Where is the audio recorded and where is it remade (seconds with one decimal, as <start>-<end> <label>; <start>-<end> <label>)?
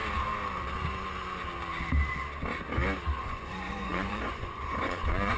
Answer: 0.0-3.2 recorded; 3.2-5.4 remade